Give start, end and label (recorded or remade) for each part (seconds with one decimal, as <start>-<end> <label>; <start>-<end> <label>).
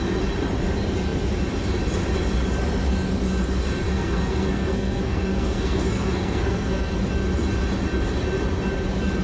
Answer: 0.0-3.9 recorded; 3.9-7.0 remade; 7.0-9.2 recorded